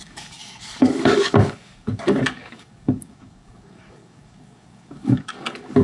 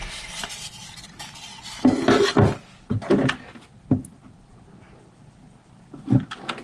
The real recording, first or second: second